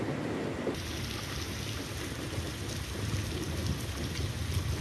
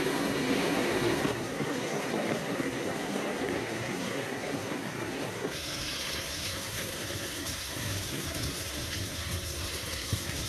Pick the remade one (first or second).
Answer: second